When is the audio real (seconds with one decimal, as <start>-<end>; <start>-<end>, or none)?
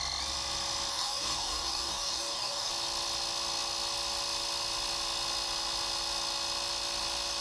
0.0-0.9; 2.7-7.4